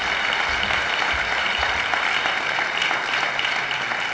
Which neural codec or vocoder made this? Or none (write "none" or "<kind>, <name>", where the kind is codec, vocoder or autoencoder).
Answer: none